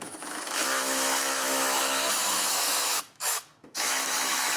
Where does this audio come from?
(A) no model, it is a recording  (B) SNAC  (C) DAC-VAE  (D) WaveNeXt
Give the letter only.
C